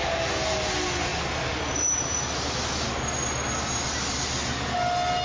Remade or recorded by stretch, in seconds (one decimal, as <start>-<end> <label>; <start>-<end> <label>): 0.0-5.2 recorded